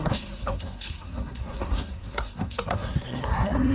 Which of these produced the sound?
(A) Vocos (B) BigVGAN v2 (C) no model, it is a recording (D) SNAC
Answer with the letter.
D